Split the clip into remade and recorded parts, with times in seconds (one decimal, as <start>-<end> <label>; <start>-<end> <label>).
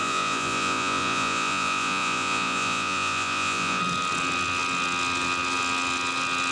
0.0-3.8 remade; 3.8-6.5 recorded